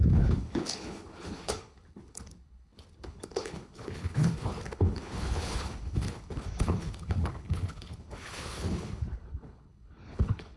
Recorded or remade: remade